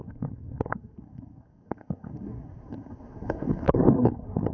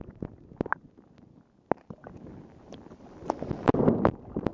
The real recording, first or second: second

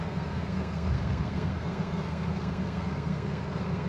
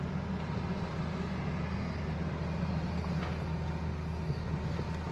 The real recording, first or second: second